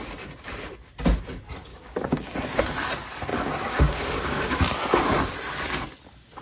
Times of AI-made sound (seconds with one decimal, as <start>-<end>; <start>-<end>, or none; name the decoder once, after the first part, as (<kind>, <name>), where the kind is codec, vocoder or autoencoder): 1.7-2.6 (codec, DAC); 3.3-4.6